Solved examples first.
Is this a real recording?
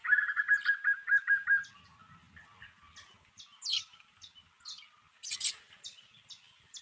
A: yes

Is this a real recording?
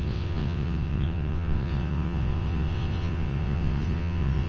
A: no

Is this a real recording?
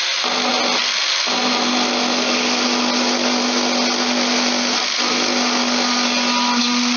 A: yes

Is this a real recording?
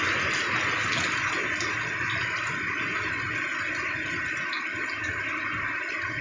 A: yes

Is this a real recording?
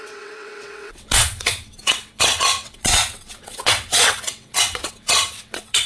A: no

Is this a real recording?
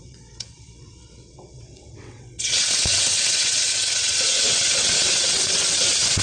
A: no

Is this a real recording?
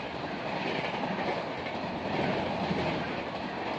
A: yes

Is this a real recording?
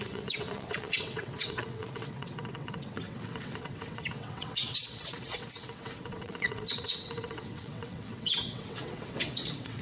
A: no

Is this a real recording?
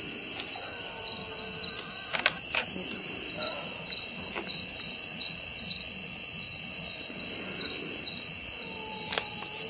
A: yes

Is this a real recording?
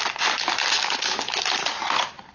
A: yes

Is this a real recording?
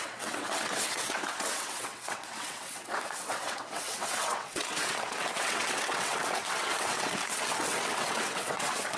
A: no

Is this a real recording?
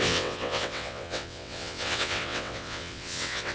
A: no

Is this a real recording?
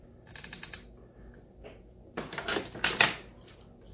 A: yes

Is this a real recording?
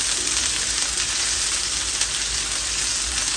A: yes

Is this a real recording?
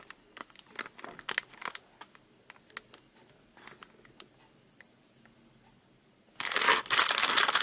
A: yes